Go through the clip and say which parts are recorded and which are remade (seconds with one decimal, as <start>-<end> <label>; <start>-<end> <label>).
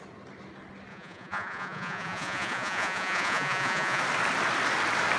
0.0-0.9 recorded; 0.9-4.0 remade; 4.0-5.2 recorded